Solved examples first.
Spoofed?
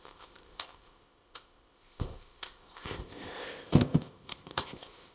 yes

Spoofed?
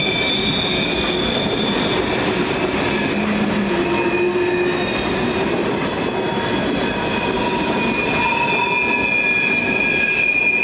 no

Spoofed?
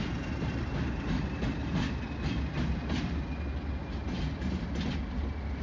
no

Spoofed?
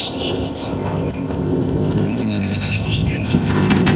yes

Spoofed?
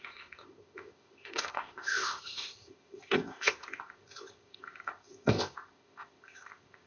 yes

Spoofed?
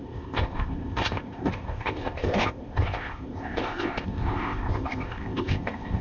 yes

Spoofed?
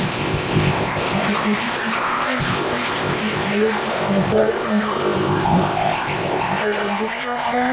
yes